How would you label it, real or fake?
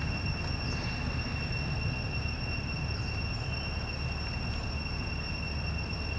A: real